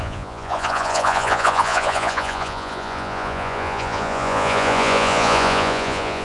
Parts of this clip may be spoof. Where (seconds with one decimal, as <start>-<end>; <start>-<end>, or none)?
0.0-6.2